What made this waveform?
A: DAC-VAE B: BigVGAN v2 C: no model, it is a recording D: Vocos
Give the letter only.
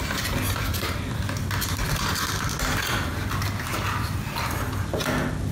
C